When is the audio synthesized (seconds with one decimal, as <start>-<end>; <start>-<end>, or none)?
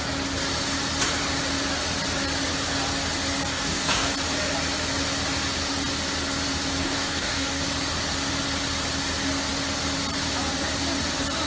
3.5-4.1; 6.8-7.6